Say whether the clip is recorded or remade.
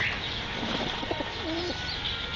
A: recorded